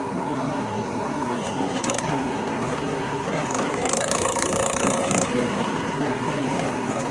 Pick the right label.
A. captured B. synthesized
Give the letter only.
B